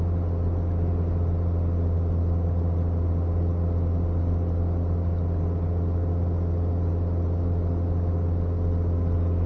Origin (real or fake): real